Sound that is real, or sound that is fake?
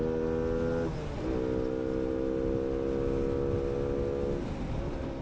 real